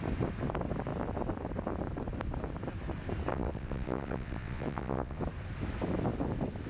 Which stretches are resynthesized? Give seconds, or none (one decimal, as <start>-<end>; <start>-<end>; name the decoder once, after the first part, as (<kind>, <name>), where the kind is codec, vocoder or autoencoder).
3.3-5.2 (vocoder, WaveNeXt)